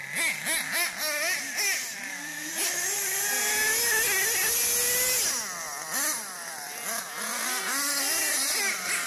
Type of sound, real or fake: real